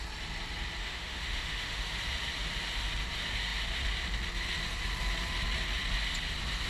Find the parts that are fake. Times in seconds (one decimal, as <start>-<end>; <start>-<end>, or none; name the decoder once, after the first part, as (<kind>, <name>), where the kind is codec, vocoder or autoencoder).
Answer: 0.8-1.8 (autoencoder, DAC-VAE)